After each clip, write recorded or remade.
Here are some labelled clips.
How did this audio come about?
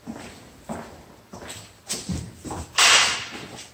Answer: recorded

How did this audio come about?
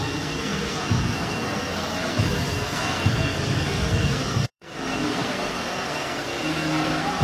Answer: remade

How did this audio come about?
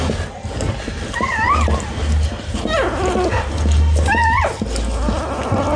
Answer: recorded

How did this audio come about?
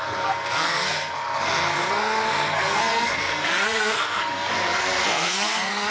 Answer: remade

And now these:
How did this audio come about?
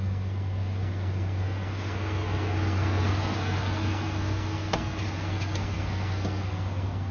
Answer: remade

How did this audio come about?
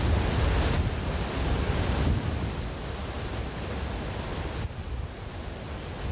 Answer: recorded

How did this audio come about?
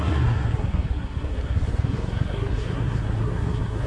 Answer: remade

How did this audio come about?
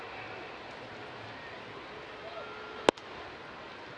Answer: recorded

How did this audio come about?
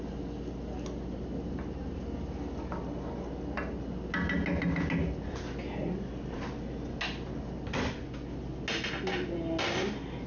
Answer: recorded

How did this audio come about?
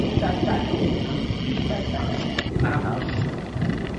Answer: recorded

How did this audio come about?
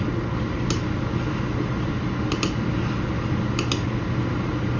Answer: recorded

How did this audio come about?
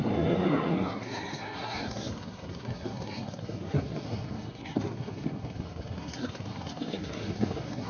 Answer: remade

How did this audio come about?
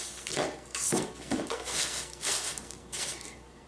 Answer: remade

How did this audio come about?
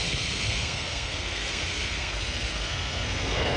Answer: remade